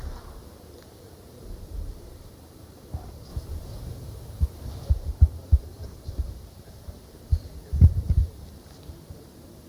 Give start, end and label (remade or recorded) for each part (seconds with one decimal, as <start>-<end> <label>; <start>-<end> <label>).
0.0-3.3 remade; 3.3-4.9 recorded; 4.9-9.7 remade